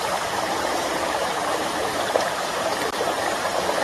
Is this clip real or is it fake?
fake